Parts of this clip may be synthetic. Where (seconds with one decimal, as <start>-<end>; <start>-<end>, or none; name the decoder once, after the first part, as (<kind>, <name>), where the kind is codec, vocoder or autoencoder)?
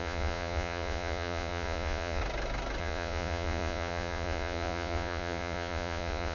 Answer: 0.0-2.2 (vocoder, Vocos); 2.8-6.3